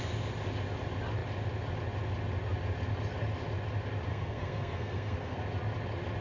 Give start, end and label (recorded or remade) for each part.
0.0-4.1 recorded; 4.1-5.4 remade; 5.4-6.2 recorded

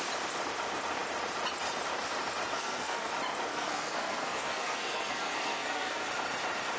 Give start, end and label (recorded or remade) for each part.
0.0-2.5 recorded; 2.5-3.1 remade; 3.1-3.5 recorded; 3.5-6.1 remade; 6.1-6.8 recorded